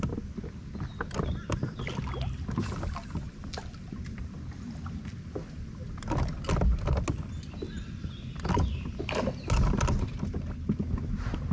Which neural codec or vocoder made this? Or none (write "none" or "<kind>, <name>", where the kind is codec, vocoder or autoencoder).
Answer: none